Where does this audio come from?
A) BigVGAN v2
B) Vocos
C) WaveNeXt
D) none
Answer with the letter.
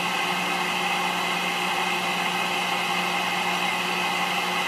D